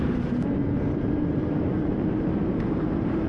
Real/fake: fake